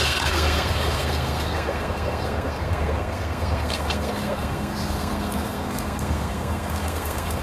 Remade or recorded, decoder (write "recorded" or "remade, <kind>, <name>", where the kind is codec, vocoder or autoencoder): remade, codec, SNAC